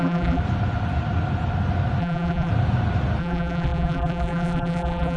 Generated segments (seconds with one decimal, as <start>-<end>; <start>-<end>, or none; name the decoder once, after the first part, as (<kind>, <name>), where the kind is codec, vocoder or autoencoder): 0.0-0.4 (vocoder, BigVGAN v2); 2.0-2.5; 3.2-5.2